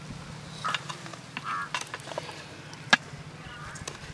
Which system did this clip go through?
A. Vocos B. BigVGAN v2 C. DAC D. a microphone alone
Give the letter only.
D